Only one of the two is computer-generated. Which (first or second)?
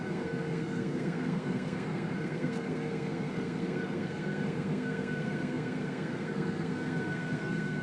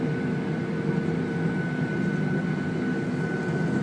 first